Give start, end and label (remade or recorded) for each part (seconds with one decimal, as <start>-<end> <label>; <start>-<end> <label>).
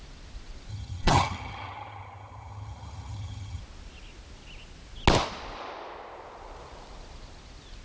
0.0-0.7 recorded; 0.7-3.6 remade; 3.6-7.8 recorded